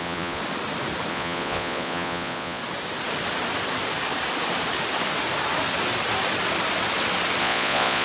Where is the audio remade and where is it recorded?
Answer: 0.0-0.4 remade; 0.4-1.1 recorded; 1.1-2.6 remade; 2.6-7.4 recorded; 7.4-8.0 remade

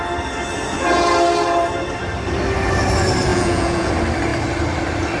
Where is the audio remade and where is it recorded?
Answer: 0.0-3.3 recorded; 3.3-3.9 remade; 3.9-5.2 recorded